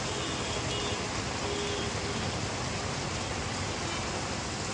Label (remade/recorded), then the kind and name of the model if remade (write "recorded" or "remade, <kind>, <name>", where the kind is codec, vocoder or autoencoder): recorded